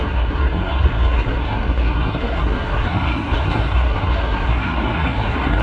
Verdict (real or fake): fake